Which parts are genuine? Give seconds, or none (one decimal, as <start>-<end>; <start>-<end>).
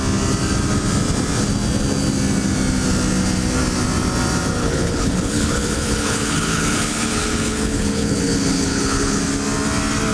0.0-4.6; 9.2-10.1